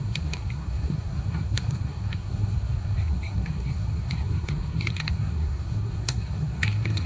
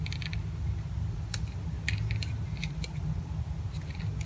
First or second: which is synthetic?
first